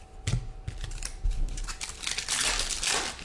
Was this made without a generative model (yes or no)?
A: yes